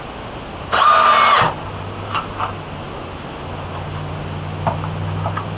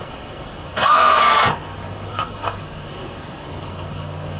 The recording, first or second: first